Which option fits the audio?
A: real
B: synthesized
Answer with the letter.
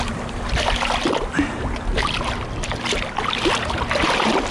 A